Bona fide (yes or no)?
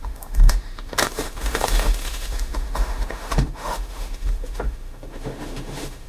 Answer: no